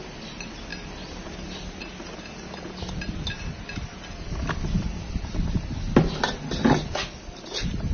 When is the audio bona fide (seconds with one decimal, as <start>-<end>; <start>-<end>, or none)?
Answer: 0.0-7.9